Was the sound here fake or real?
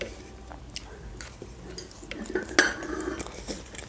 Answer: real